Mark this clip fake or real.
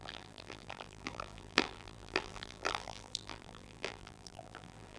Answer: fake